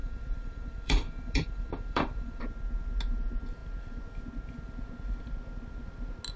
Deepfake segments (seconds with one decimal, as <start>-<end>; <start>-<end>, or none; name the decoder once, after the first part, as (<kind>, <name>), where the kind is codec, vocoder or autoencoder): 0.0-2.4 (vocoder, BigVGAN v2)